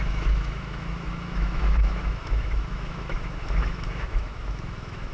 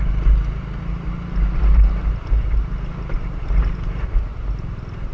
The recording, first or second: second